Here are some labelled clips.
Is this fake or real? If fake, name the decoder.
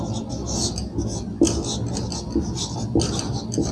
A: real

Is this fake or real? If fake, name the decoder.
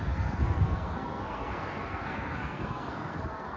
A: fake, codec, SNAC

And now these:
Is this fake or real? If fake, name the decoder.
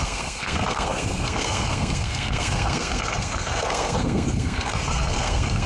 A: fake, codec, SNAC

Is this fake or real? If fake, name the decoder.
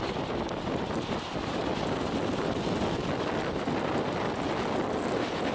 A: real